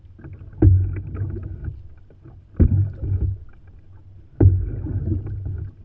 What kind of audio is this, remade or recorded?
recorded